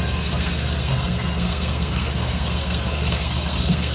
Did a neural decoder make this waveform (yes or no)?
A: yes